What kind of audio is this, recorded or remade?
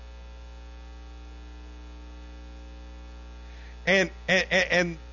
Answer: recorded